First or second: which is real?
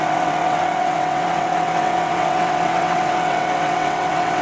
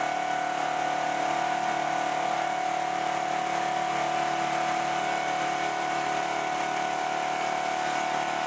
second